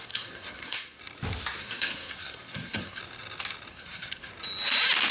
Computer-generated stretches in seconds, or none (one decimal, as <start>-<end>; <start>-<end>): 0.0-1.0; 1.6-3.0; 3.7-4.3

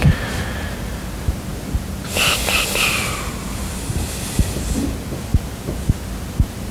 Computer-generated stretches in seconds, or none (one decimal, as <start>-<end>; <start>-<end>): none

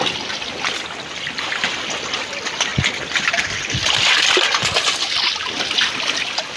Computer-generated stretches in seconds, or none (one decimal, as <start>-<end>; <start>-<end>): none

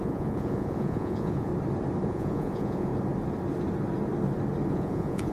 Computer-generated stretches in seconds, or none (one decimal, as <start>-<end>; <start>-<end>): 0.0-1.5; 2.1-2.9; 4.7-5.3

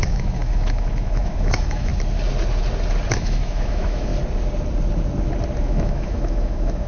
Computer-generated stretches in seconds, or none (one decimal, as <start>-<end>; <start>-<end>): 0.0-1.9; 3.1-4.1; 5.6-6.9

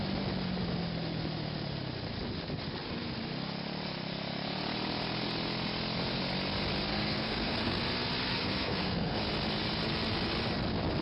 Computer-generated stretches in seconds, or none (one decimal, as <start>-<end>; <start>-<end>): 6.9-7.8; 8.3-9.2

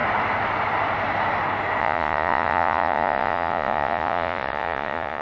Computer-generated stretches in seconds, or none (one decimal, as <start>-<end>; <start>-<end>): 1.8-5.2

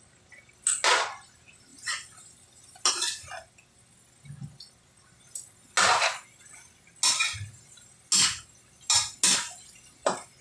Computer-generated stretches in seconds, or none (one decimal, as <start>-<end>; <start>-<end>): none